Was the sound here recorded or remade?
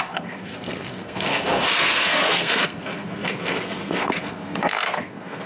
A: remade